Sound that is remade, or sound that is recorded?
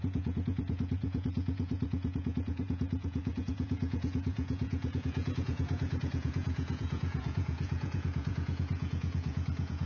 remade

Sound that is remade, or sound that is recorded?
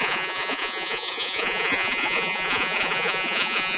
remade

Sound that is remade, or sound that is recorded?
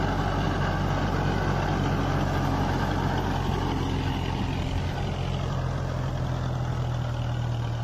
recorded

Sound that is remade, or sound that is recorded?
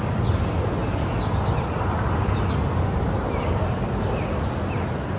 recorded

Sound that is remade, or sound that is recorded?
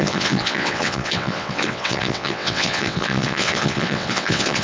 remade